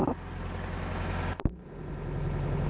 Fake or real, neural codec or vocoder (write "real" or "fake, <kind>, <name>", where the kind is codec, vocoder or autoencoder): real